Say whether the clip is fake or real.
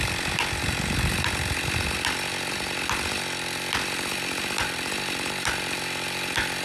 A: real